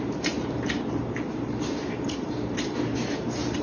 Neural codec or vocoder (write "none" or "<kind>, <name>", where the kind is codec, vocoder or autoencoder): vocoder, BigVGAN v2